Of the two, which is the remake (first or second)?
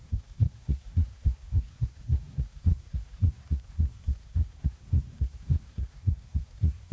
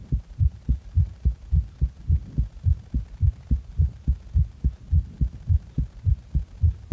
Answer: first